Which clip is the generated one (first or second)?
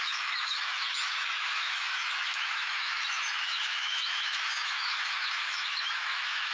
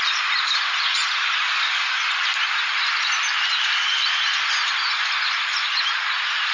first